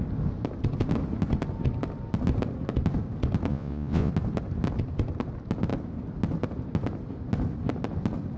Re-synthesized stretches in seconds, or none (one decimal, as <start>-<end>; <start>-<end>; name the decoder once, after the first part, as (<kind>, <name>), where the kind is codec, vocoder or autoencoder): 3.5-4.1 (vocoder, Vocos)

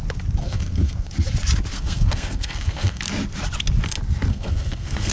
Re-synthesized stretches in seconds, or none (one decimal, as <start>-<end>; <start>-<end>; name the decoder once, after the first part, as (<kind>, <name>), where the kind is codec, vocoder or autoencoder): 0.4-1.1 (codec, SNAC); 1.7-3.0; 4.3-5.1

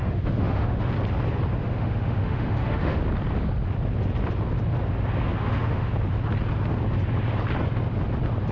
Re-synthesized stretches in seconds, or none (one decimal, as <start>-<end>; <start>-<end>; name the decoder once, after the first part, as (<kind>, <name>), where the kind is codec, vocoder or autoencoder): 0.0-0.9 (autoencoder, DAC-VAE); 1.6-3.0; 5.4-5.9